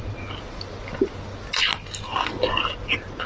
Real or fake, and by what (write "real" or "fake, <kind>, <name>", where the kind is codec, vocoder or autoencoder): real